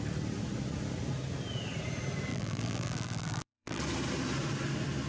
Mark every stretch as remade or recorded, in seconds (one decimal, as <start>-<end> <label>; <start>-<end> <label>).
0.0-2.3 recorded; 2.3-3.8 remade; 3.8-5.1 recorded